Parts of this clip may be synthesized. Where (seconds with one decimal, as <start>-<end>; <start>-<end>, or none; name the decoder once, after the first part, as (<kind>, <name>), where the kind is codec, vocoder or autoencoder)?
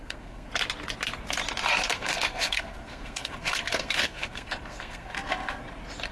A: 0.0-0.5 (codec, SNAC); 1.9-5.6